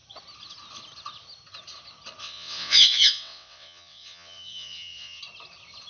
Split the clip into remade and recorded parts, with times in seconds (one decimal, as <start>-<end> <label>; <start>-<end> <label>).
0.0-2.2 recorded; 2.2-5.2 remade; 5.2-5.9 recorded